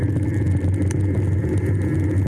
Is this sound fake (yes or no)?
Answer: no